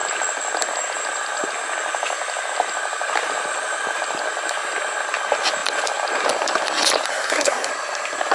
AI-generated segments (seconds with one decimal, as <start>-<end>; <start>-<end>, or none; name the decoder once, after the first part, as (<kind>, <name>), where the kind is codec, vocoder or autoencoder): 7.1-7.7 (codec, SNAC)